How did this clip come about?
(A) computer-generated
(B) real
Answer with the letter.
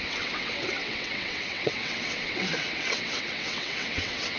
A